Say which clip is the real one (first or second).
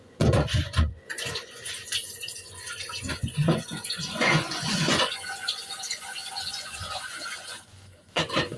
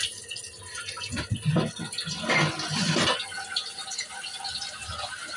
second